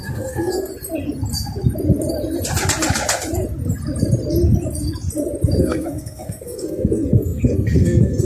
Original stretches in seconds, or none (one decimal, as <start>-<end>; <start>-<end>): 0.7-5.6